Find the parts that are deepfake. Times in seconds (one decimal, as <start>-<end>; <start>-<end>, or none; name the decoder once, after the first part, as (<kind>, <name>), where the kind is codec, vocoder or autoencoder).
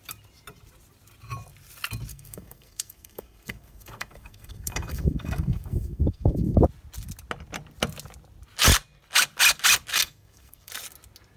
2.1-6.6 (codec, SNAC); 9.9-10.7